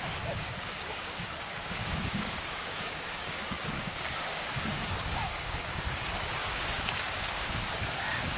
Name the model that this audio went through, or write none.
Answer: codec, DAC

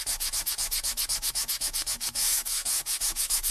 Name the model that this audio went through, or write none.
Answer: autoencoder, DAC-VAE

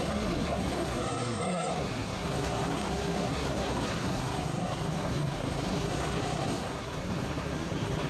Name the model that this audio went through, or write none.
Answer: codec, SNAC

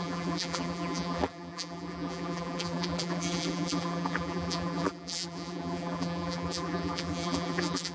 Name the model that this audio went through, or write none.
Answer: vocoder, BigVGAN v2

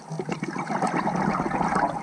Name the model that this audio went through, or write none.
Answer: none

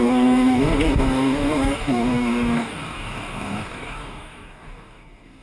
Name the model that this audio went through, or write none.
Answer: codec, DAC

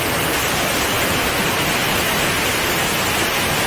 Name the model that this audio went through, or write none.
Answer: none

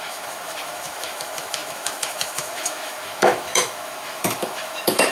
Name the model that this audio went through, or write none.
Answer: autoencoder, DAC-VAE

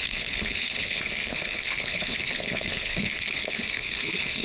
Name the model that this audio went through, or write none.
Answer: codec, HILCodec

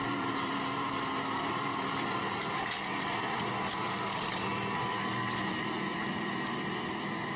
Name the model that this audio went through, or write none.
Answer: vocoder, BigVGAN v2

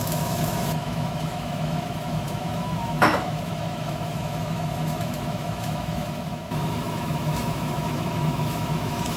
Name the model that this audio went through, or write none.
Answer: autoencoder, DAC-VAE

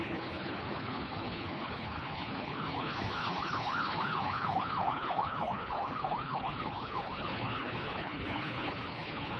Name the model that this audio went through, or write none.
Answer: codec, HILCodec